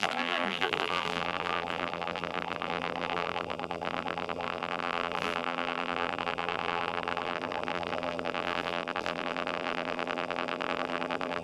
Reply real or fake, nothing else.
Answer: fake